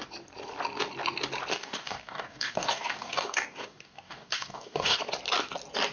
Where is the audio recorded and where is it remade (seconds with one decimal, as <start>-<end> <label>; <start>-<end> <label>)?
0.0-1.5 recorded; 1.5-5.0 remade; 5.0-5.9 recorded